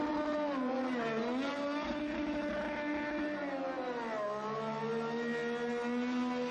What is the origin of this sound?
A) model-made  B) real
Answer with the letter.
B